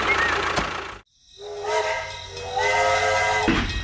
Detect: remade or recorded recorded